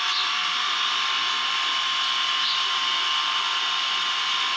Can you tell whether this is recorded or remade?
recorded